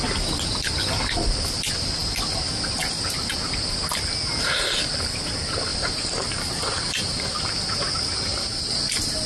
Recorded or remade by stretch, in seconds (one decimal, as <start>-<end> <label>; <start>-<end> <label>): 0.0-5.7 recorded; 5.7-7.5 remade; 7.5-8.3 recorded; 8.3-8.8 remade; 8.8-9.3 recorded